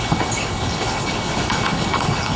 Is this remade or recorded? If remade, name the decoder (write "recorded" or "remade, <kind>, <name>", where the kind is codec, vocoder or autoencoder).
remade, codec, HILCodec